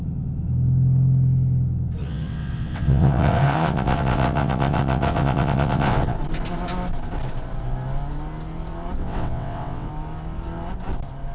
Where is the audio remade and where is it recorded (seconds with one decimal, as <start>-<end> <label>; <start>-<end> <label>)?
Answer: 0.0-2.0 recorded; 2.0-6.2 remade; 6.2-9.0 recorded; 9.0-9.9 remade; 9.9-11.3 recorded